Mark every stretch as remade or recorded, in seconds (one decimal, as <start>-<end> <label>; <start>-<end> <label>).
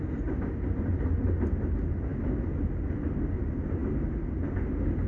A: 0.0-5.1 recorded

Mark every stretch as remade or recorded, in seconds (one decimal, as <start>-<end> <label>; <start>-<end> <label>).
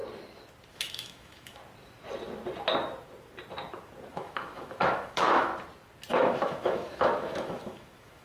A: 0.0-0.7 recorded; 0.7-1.6 remade; 1.6-4.1 recorded; 4.1-5.5 remade; 5.5-6.1 recorded; 6.1-8.2 remade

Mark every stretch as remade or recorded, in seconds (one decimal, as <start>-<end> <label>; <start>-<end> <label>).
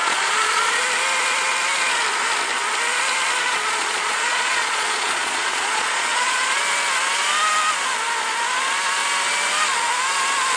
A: 0.0-0.8 remade; 0.8-3.4 recorded; 3.4-6.6 remade; 6.6-10.6 recorded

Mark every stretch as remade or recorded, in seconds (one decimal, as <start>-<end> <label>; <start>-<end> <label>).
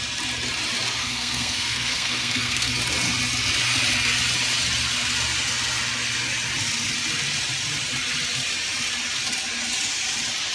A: 0.0-1.0 recorded; 1.0-2.7 remade; 2.7-10.5 recorded